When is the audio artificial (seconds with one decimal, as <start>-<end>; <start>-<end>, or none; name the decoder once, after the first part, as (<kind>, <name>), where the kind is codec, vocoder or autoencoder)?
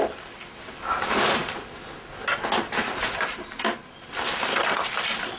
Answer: none